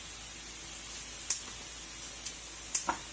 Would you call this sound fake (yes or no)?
no